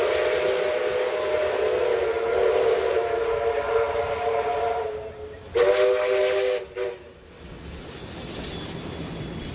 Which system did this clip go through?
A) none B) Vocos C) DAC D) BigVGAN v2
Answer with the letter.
A